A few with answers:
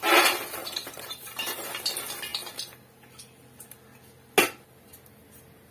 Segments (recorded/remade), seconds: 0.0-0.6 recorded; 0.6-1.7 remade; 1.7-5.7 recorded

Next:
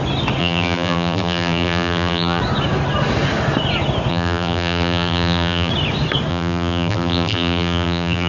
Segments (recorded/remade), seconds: 0.0-0.4 recorded; 0.4-2.4 remade; 2.4-4.1 recorded; 4.1-5.7 remade; 5.7-6.3 recorded; 6.3-8.3 remade